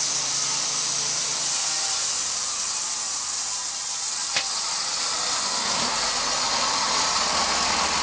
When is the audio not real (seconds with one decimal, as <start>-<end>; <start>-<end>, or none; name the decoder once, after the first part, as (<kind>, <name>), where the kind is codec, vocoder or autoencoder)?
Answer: none